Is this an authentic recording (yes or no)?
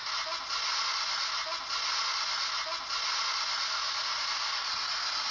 yes